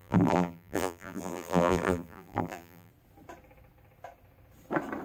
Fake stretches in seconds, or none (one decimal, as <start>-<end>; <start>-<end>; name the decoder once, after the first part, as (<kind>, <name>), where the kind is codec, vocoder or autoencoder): 0.0-2.9 (vocoder, BigVGAN v2)